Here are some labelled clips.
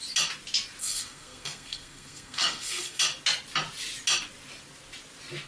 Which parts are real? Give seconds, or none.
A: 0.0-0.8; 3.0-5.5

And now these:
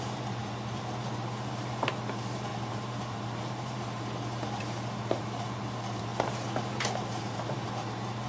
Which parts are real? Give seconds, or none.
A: 6.1-6.7

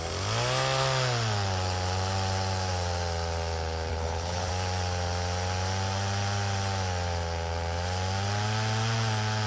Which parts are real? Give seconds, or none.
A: 0.0-3.9; 4.5-9.5

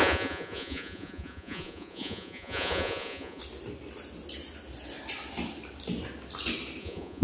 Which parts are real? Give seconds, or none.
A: 3.4-6.8

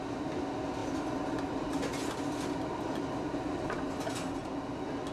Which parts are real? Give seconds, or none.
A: 0.0-5.1

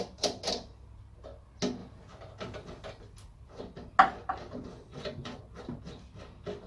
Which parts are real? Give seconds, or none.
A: 0.0-4.9; 5.4-6.7

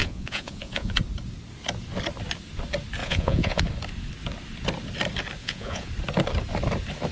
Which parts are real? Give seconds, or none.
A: 1.0-3.0; 3.6-5.4; 5.9-7.1

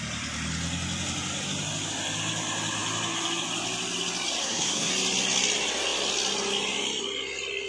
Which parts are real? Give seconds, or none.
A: 0.0-4.4; 4.9-7.7